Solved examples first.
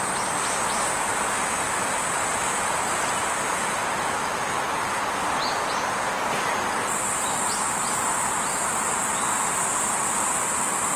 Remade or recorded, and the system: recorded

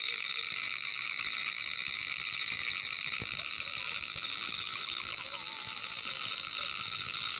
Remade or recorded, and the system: remade, vocoder, BigVGAN v2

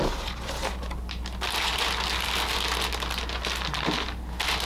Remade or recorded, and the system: recorded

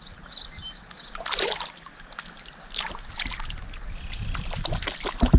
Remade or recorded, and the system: recorded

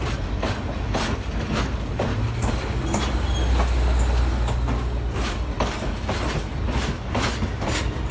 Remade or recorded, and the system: recorded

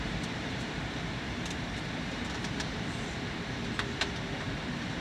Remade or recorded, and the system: remade, vocoder, BigVGAN v2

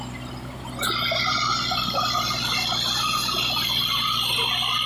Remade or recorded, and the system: recorded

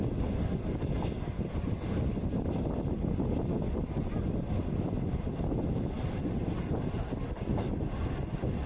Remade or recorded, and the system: recorded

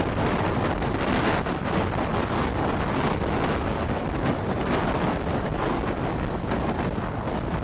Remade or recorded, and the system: recorded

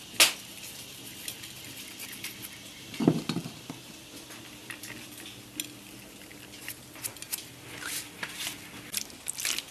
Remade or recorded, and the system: recorded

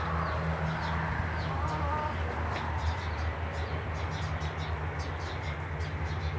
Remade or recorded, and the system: recorded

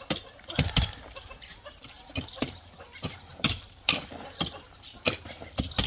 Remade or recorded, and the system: remade, vocoder, BigVGAN v2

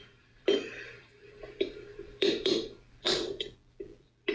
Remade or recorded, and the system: remade, vocoder, BigVGAN v2